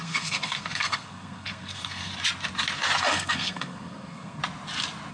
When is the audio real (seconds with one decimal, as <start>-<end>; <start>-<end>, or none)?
2.1-3.0; 4.4-5.1